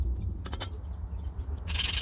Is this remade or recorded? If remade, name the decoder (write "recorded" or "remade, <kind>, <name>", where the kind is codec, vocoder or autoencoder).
recorded